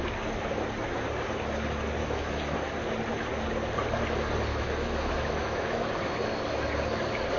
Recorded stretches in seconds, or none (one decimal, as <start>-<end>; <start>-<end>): 0.0-2.0; 2.7-4.5; 5.9-7.4